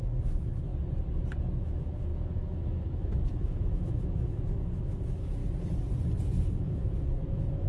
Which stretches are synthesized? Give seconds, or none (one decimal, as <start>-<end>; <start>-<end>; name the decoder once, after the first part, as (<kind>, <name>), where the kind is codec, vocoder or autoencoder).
0.0-0.7 (autoencoder, DAC-VAE); 1.6-5.4; 6.4-7.7